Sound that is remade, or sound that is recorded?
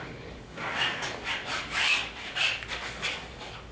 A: remade